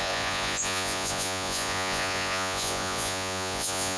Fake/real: fake